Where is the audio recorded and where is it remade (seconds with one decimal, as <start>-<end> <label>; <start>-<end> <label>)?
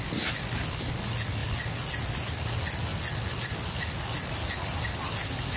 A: 0.0-5.6 recorded